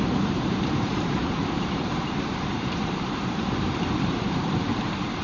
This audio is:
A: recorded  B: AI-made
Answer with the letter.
B